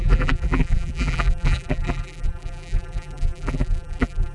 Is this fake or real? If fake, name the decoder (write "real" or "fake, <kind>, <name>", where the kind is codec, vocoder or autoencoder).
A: fake, vocoder, BigVGAN v2